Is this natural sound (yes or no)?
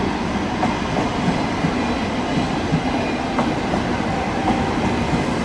yes